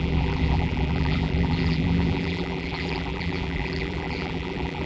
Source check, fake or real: fake